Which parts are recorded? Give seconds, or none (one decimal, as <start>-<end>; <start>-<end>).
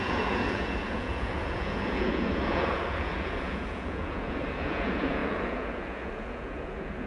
none